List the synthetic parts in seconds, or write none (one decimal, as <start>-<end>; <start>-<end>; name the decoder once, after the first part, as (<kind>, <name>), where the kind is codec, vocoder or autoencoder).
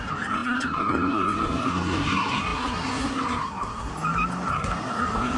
0.0-3.9 (codec, SNAC); 4.5-5.4